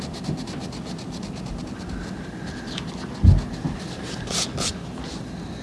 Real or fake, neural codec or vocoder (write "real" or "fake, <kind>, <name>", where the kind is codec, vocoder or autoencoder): real